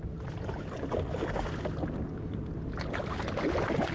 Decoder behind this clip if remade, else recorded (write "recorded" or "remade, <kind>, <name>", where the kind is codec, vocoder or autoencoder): recorded